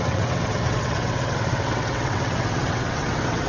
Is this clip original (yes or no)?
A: no